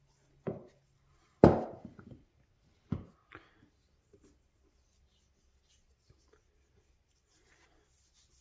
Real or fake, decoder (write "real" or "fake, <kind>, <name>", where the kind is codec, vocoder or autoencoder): real